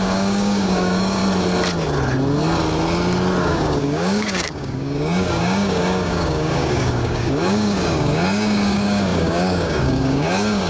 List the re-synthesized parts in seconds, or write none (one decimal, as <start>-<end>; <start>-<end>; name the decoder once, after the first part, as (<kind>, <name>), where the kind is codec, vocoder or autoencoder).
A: 0.0-1.2 (codec, DAC); 3.4-10.7